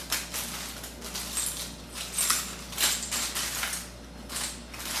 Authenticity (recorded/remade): recorded